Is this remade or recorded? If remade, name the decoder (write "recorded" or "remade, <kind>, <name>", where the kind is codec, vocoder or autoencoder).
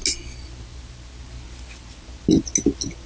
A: recorded